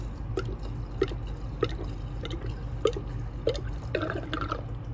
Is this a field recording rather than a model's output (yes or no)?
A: yes